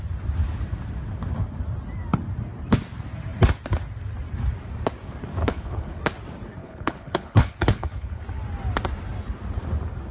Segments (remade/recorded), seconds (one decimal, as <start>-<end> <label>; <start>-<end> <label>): 0.0-5.4 recorded; 5.4-6.0 remade; 6.0-6.6 recorded; 6.6-8.2 remade; 8.2-10.1 recorded